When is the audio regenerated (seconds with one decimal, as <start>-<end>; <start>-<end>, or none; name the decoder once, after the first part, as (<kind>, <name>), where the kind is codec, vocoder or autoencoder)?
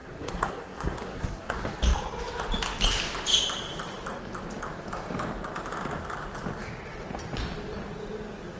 0.0-1.5 (codec, SNAC)